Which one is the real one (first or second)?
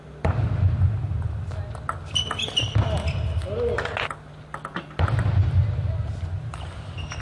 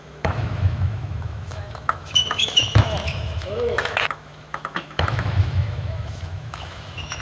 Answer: first